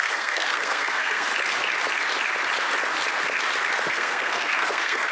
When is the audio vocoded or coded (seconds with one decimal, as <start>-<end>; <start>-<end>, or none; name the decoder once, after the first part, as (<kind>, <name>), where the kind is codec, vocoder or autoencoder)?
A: 0.0-1.3 (codec, SNAC); 3.9-5.1